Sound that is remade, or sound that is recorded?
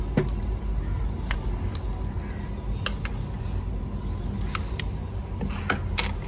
recorded